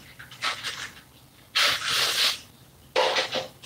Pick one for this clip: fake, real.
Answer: real